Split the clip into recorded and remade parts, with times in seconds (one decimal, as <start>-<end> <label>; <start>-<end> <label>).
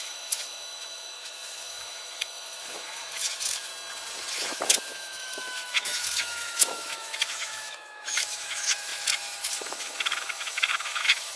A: 0.0-3.7 remade; 3.7-4.3 recorded; 4.3-11.4 remade